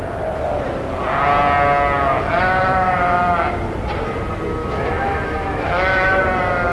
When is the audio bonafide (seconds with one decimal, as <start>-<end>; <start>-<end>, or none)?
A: 0.0-4.6; 6.2-6.7